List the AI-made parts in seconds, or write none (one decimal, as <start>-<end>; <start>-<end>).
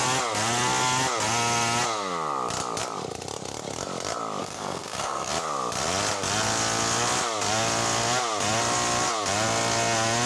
4.4-5.3